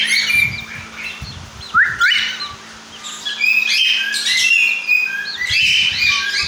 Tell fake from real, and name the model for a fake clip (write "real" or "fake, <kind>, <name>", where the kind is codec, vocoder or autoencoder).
real